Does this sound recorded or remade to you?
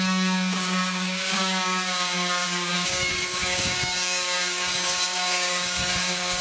remade